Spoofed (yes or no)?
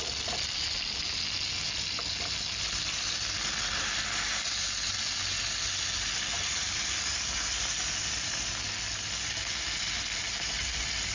no